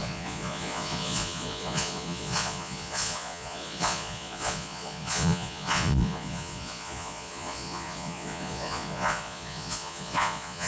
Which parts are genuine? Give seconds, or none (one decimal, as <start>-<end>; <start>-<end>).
none